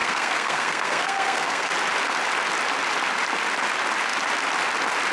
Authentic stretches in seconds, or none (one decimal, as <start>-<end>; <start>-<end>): 1.7-5.1